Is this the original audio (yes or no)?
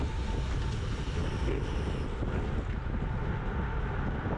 yes